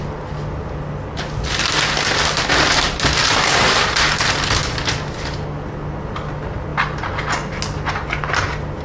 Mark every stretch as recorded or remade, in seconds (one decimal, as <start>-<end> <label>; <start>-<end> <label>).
0.0-8.8 recorded